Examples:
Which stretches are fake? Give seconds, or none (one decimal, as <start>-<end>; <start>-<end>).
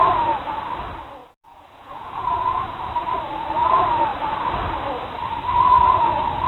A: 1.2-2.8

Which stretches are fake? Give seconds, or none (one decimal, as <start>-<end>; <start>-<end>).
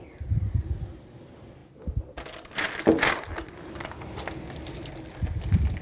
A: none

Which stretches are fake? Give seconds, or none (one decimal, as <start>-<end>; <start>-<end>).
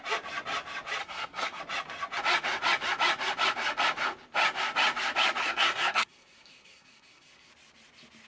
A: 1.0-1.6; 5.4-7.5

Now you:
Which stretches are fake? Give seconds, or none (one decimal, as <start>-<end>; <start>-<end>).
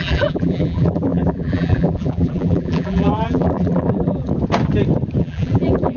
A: 0.0-4.3; 5.2-6.0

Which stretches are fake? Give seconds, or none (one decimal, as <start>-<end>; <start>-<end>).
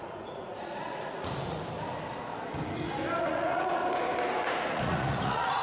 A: 0.0-1.6; 3.2-3.8; 4.5-5.6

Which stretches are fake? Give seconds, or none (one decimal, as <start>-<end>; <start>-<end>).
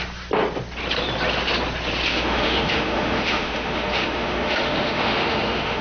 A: 2.1-5.8